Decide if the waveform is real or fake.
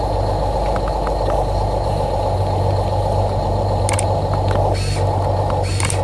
real